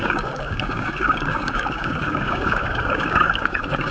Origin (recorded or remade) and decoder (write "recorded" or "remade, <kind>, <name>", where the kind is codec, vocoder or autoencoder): remade, codec, DAC